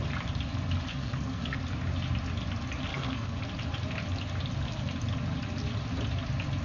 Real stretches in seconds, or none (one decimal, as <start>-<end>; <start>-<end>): 0.0-0.9; 1.6-2.9; 3.4-6.6